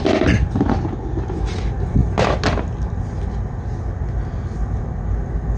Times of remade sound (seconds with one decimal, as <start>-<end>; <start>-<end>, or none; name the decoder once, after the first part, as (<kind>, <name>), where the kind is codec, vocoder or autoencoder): none